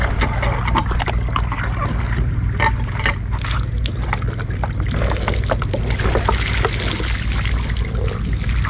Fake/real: real